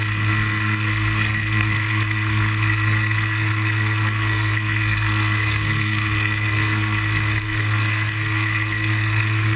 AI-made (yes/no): yes